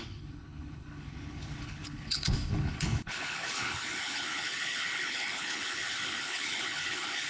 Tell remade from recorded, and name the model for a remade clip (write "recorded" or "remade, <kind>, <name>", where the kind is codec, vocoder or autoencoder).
remade, codec, HILCodec